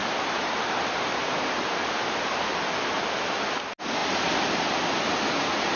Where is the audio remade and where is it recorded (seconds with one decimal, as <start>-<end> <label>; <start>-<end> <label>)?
0.0-2.4 remade; 2.4-5.8 recorded

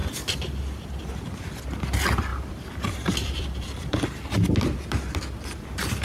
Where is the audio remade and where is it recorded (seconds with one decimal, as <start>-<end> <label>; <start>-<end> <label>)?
0.0-1.0 remade; 1.0-2.3 recorded; 2.3-4.3 remade; 4.3-6.0 recorded

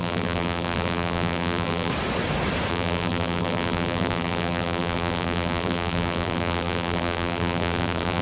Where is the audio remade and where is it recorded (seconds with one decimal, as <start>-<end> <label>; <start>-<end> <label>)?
0.0-1.9 remade; 1.9-2.7 recorded; 2.7-8.2 remade

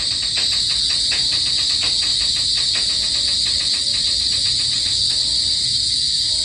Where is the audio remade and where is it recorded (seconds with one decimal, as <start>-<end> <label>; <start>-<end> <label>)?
0.0-6.4 recorded